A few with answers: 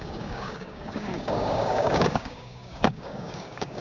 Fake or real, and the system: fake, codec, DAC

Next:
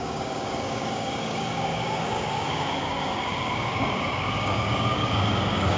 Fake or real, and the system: fake, codec, DAC